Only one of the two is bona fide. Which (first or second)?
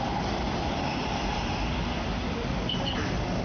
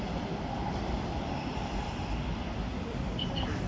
first